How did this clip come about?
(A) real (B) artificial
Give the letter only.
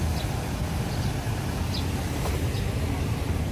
A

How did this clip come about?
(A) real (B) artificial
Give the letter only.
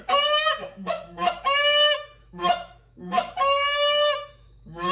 B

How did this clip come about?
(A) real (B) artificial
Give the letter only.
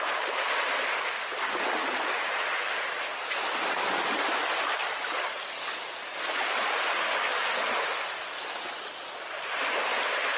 A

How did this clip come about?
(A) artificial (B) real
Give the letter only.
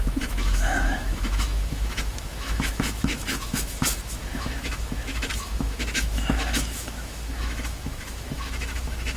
A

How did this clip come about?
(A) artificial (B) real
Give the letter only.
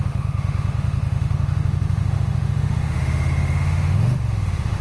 A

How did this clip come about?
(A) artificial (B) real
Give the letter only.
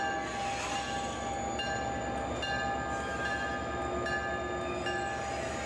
B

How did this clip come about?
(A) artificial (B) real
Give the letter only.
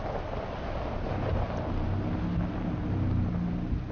B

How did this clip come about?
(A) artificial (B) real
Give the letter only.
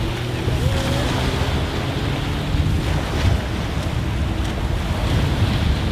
B